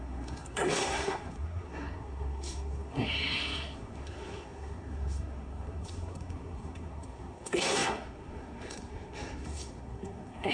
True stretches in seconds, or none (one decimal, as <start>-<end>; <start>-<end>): none